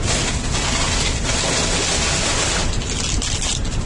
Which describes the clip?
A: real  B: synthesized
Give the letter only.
A